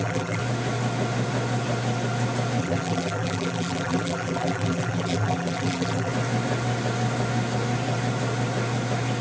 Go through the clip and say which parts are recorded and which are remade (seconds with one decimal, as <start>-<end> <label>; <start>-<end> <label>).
0.0-0.4 remade; 0.4-2.6 recorded; 2.6-6.1 remade; 6.1-9.2 recorded